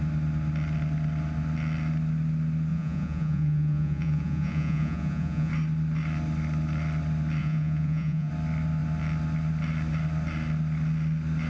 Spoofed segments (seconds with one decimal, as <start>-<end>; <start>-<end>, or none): 2.7-5.5; 7.4-8.3